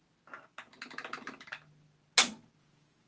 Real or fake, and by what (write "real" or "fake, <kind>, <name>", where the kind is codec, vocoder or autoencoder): real